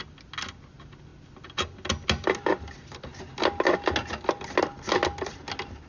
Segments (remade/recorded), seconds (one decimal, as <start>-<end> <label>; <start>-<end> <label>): 0.0-5.9 recorded